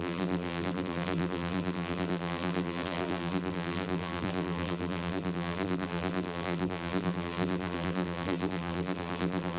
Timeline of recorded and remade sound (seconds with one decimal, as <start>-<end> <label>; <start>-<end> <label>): 0.0-9.6 remade